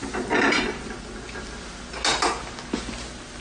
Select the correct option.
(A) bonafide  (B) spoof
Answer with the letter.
A